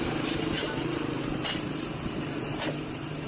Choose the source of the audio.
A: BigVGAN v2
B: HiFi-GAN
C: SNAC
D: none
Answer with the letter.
A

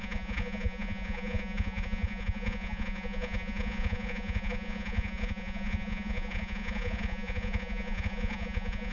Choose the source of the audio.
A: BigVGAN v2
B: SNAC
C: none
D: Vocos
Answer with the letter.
D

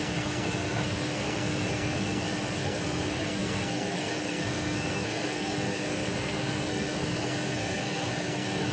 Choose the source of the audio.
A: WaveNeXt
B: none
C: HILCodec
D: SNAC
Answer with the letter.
D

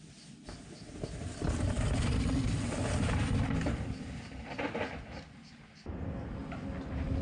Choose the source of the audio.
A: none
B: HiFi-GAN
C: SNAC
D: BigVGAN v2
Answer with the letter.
A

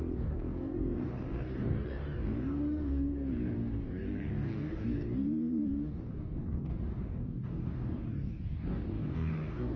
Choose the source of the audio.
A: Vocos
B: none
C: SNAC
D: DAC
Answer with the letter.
D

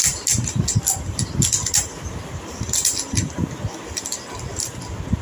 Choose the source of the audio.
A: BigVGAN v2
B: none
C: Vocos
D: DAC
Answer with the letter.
B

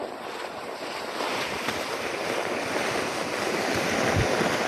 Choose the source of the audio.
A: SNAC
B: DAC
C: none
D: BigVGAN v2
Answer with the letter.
C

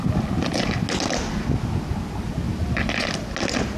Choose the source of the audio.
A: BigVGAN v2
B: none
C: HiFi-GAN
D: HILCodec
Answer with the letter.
B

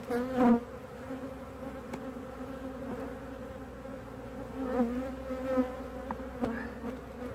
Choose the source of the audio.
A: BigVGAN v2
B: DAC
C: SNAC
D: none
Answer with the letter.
D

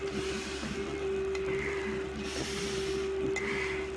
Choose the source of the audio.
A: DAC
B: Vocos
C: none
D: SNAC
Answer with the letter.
C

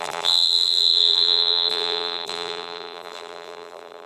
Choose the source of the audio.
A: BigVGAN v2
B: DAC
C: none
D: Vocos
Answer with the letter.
A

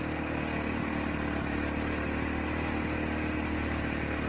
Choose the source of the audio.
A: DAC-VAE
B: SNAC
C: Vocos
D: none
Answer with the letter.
D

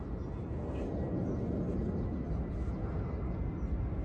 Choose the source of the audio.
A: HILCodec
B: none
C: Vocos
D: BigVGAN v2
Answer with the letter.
B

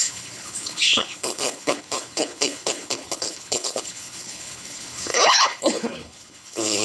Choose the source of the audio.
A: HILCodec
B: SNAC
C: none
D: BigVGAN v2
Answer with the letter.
A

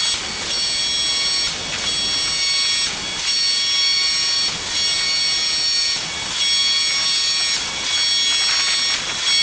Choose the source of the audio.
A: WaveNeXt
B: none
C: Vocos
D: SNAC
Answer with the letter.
B